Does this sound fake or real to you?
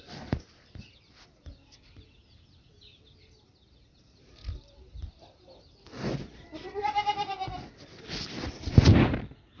fake